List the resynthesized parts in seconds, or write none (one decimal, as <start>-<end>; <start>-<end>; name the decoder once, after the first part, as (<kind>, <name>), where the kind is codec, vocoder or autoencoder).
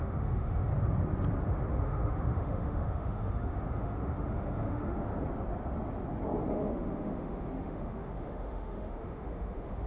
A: 0.0-0.7 (autoencoder, DAC-VAE); 1.7-5.1; 6.5-9.9